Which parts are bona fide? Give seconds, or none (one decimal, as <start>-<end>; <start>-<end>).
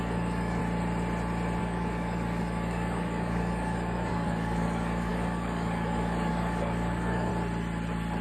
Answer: 0.6-1.6; 7.3-8.2